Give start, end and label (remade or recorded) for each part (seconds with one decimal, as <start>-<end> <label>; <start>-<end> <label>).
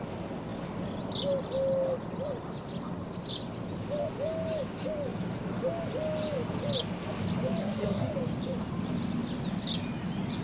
0.0-7.6 recorded; 7.6-8.1 remade; 8.1-10.4 recorded